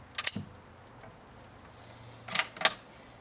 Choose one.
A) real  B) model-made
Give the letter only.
A